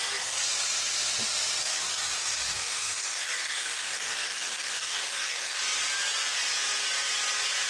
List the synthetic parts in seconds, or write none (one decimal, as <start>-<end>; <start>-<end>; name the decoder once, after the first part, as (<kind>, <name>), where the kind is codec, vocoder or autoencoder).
1.6-5.6 (codec, DAC)